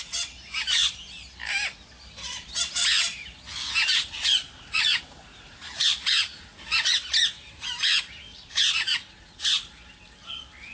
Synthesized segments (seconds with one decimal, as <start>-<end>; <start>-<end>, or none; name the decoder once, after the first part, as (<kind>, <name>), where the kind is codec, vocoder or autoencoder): 3.9-7.0 (vocoder, Vocos); 8.3-9.8